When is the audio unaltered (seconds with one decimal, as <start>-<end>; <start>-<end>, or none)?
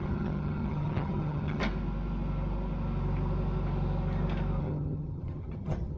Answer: 1.6-4.6